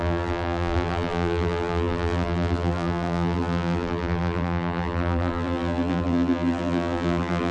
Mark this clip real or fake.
fake